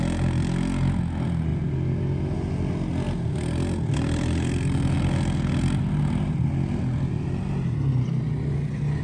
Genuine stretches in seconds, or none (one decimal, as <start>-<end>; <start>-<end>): 0.0-9.0